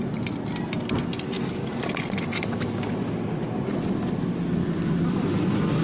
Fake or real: real